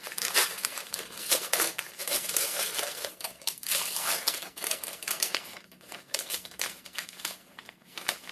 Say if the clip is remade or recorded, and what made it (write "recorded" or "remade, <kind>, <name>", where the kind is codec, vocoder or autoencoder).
remade, codec, SNAC